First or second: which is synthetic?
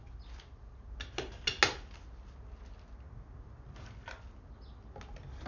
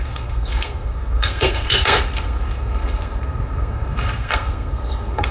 second